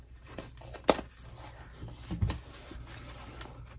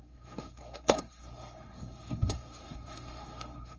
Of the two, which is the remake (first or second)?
second